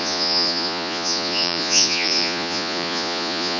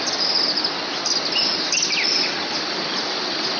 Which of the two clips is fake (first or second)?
first